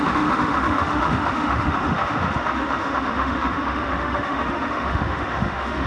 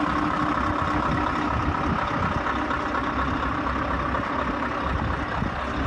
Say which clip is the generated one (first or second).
first